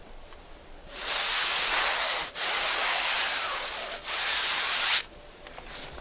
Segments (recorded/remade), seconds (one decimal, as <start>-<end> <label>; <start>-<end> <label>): 0.0-0.8 recorded; 0.8-3.0 remade; 3.0-6.0 recorded